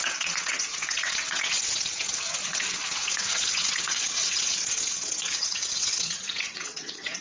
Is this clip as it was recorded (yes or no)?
no